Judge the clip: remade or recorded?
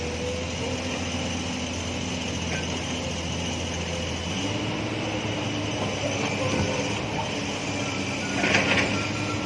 recorded